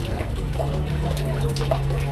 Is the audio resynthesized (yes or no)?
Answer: yes